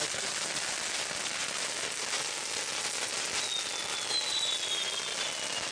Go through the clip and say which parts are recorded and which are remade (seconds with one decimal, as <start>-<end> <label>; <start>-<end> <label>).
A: 0.0-5.7 recorded